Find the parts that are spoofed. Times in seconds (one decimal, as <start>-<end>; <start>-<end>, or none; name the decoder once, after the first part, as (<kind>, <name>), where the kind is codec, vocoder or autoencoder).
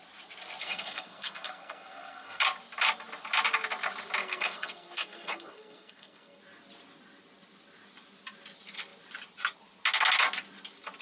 0.6-2.4 (codec, SNAC); 4.2-6.4